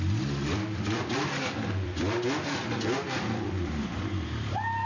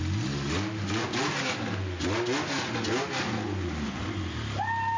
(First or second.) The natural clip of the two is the second